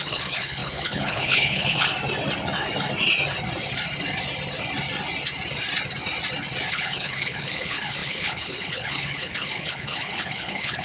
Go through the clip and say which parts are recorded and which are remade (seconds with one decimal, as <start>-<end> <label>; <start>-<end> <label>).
0.0-1.9 remade; 1.9-6.7 recorded; 6.7-10.8 remade